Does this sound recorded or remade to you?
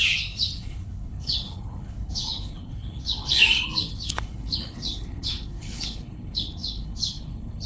remade